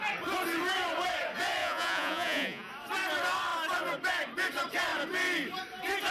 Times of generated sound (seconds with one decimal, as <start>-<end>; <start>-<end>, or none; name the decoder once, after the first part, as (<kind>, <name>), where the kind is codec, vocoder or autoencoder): 1.6-2.7 (vocoder, Vocos)